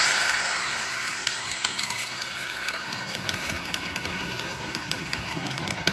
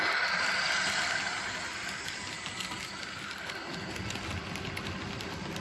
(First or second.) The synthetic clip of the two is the first